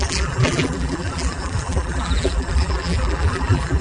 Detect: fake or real fake